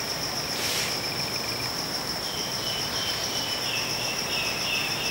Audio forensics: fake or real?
fake